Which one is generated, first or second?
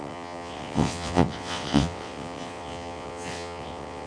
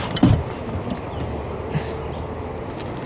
first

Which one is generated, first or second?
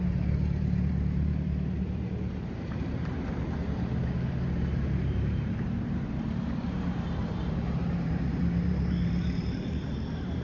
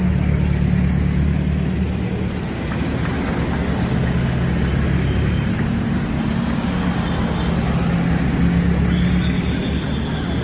first